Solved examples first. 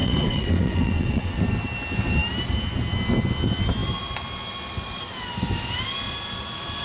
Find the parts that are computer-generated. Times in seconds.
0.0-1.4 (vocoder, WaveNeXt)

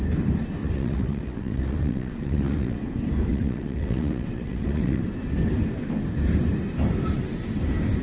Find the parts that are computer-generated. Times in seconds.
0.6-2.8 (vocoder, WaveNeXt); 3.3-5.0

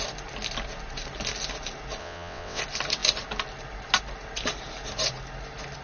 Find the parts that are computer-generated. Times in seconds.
2.0-2.6 (vocoder, WaveNeXt)

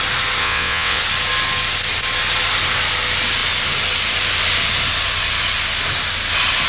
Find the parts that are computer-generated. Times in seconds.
0.4-1.0 (vocoder, WaveNeXt)

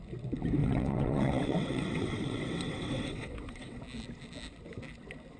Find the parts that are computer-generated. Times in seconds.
0.6-3.8 (vocoder, WaveNeXt)